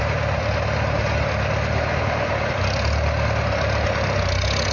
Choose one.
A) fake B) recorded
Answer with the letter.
B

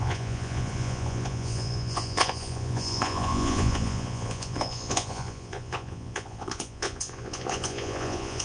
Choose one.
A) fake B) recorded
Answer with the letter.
A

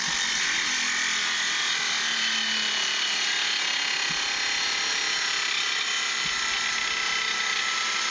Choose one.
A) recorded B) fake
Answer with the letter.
A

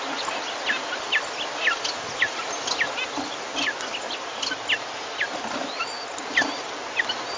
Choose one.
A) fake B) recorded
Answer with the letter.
B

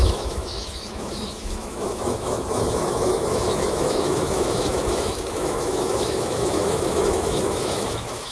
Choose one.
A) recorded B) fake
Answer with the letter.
B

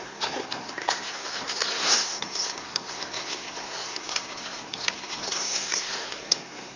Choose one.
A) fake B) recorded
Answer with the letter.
A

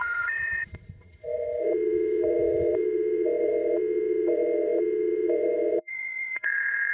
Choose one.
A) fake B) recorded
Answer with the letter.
A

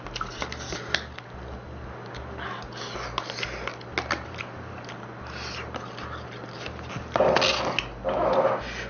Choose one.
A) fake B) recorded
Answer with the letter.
B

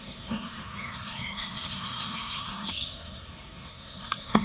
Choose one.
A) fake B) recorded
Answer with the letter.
A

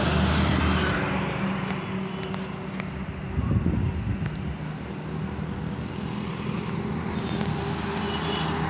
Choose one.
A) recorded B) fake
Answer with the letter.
A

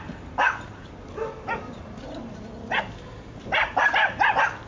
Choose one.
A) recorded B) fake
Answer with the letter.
A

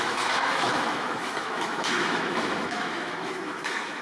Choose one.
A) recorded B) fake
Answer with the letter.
B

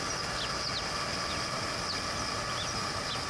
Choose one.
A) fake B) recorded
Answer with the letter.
B